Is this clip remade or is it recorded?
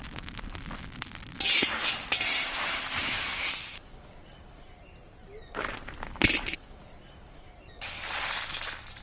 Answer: recorded